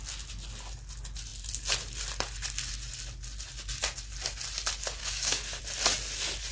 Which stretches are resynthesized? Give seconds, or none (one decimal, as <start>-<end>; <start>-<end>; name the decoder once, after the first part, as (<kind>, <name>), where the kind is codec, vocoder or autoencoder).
5.0-5.6 (codec, DAC)